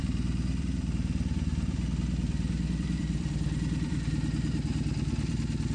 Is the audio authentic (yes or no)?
no